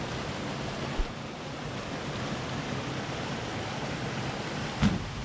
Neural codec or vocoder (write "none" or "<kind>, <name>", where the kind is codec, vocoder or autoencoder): none